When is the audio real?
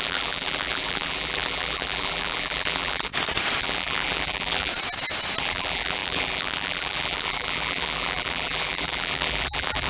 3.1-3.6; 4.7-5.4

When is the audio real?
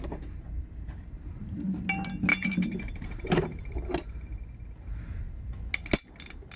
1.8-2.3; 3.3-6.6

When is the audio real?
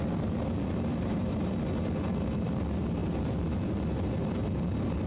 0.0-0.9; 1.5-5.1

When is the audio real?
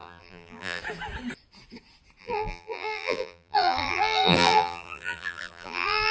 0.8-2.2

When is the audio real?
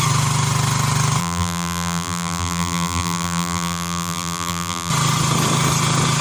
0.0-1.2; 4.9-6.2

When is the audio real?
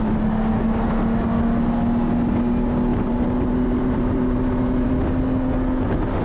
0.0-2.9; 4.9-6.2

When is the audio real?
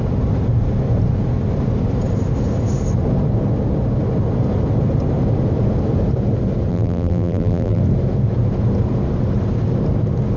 0.0-6.7; 7.8-10.4